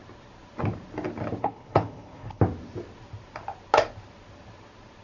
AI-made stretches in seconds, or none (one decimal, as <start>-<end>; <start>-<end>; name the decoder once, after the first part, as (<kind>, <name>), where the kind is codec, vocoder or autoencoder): 1.4-2.4 (codec, HILCodec)